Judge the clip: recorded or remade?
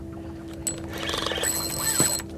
recorded